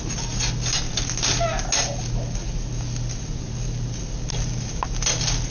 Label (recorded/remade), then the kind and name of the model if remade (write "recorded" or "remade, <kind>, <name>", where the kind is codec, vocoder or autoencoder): recorded